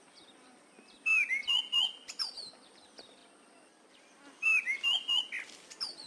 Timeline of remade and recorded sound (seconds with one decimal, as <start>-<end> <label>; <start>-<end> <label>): 0.0-6.1 recorded